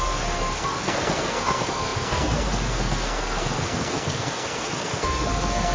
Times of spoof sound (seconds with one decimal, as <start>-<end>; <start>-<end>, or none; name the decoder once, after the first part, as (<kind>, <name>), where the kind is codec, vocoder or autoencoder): 0.0-5.7 (codec, SNAC)